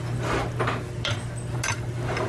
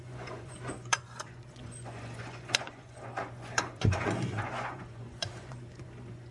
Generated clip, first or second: second